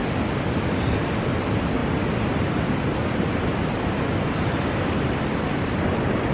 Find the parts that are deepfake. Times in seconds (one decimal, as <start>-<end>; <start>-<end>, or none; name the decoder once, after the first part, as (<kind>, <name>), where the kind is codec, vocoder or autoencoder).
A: none